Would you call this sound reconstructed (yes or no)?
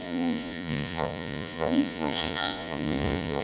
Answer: yes